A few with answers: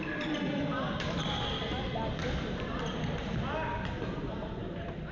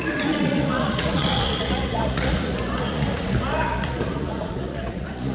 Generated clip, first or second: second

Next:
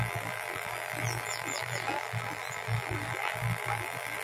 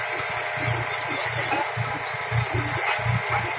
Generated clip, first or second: first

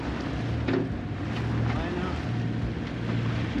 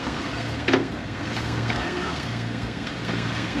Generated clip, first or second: second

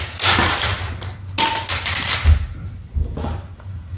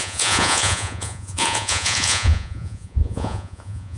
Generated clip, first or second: second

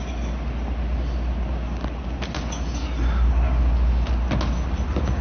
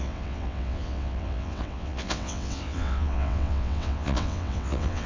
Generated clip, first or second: second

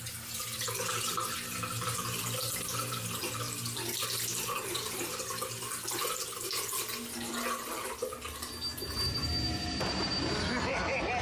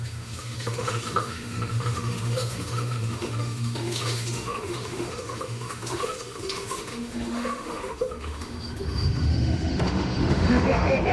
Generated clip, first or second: second